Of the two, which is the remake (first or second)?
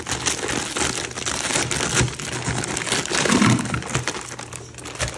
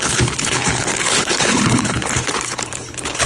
second